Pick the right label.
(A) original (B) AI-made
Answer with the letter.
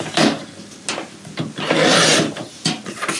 A